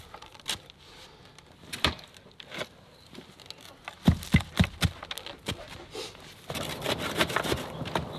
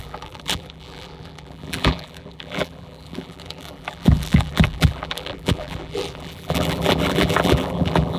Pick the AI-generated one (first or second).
second